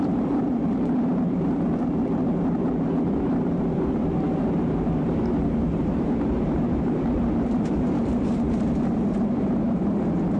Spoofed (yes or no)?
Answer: yes